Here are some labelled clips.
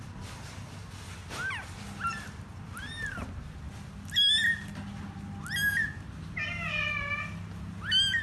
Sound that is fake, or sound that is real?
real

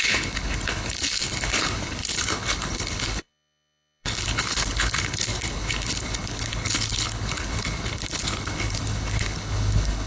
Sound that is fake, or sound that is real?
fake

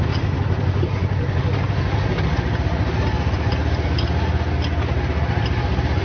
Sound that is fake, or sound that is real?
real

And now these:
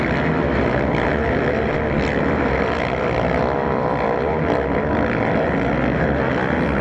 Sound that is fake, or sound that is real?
real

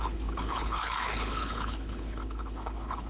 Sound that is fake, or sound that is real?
fake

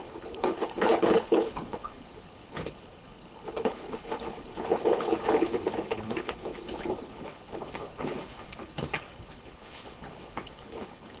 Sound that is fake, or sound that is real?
fake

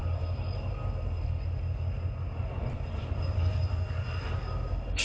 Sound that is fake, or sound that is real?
real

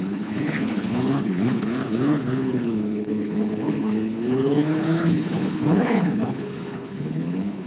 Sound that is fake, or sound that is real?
fake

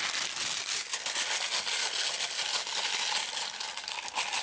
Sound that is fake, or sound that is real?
real